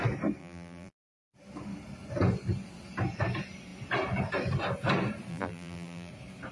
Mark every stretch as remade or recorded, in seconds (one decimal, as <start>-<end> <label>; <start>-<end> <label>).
0.0-0.4 recorded; 0.4-1.1 remade; 1.1-5.3 recorded; 5.3-6.1 remade; 6.1-6.5 recorded